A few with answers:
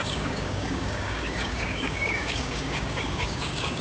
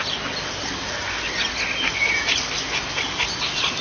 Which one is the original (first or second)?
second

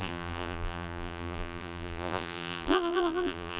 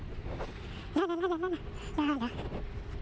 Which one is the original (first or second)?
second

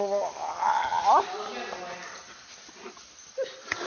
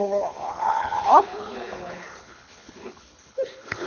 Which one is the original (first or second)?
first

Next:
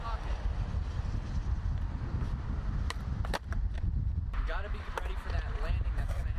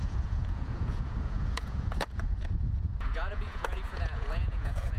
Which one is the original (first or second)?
first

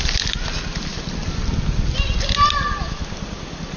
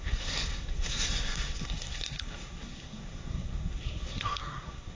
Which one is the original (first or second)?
first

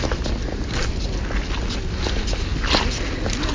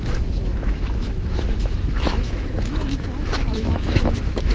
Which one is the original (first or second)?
first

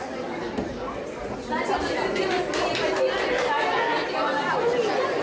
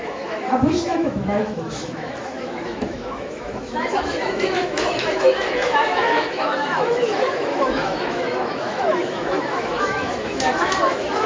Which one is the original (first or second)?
first